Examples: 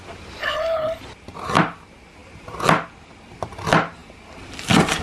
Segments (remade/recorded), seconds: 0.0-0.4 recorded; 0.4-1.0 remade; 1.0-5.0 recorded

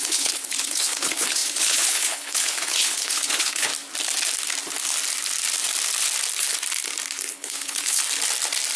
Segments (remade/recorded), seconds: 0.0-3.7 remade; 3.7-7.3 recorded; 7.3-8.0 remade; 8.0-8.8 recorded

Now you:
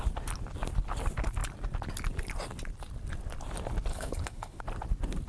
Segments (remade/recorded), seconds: 0.0-3.9 recorded; 3.9-4.6 remade; 4.6-5.3 recorded